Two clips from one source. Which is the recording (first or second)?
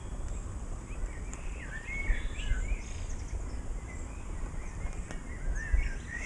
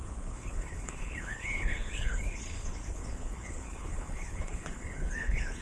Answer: first